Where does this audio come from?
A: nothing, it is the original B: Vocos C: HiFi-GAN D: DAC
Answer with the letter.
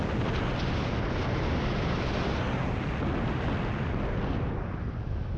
A